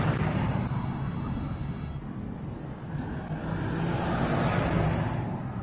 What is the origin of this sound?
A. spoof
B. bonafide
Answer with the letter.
B